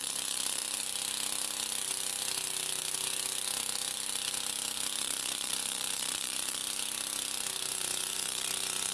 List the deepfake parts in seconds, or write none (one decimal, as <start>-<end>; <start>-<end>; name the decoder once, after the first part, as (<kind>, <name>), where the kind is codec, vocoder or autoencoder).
0.0-0.6 (vocoder, Vocos); 5.0-6.6; 7.7-8.9